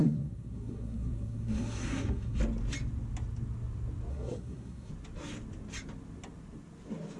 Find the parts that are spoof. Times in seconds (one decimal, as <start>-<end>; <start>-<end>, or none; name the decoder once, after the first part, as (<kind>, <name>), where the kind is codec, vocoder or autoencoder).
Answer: 0.0-2.4 (codec, SNAC); 4.1-4.9